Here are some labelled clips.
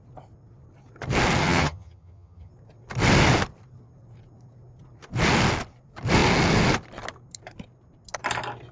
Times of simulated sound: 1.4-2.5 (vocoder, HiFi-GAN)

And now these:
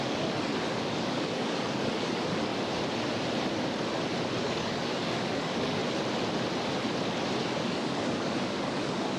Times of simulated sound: 0.0-2.5 (codec, DAC); 4.4-5.8; 7.4-9.2

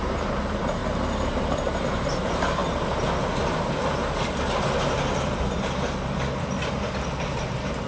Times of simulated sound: 0.0-2.6 (vocoder, BigVGAN v2); 7.3-7.9

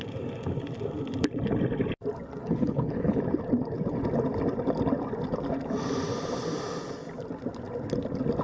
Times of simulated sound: 2.4-3.2 (codec, HILCodec)